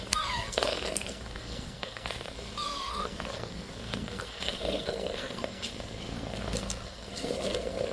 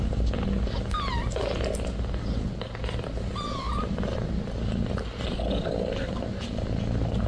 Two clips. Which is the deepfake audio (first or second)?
first